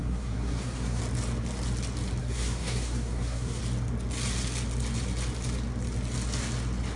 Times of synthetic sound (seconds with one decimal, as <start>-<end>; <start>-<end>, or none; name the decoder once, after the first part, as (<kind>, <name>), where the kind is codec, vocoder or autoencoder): 0.0-1.0 (codec, SNAC); 2.2-3.6